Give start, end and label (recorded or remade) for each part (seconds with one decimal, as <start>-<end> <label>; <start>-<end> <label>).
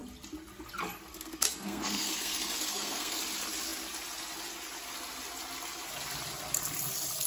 0.0-1.1 recorded; 1.1-3.2 remade; 3.2-7.3 recorded